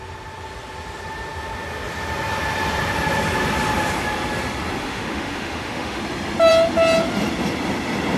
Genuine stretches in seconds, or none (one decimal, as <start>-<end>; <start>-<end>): 0.0-4.8; 6.0-8.2